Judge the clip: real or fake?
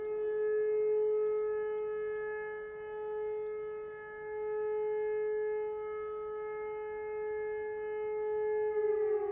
real